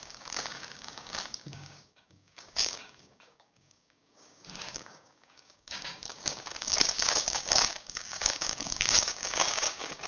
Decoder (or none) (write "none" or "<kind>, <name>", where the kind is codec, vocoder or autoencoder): codec, DAC